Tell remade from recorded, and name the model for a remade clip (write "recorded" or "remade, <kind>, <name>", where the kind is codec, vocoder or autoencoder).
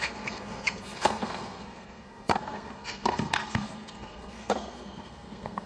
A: remade, codec, SNAC